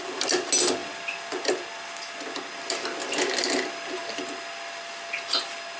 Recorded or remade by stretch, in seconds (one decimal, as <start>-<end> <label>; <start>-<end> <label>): 0.0-5.8 recorded